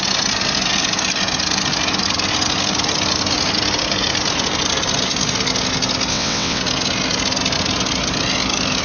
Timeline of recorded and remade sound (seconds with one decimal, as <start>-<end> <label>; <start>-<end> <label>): 0.0-6.1 recorded; 6.1-6.6 remade; 6.6-8.8 recorded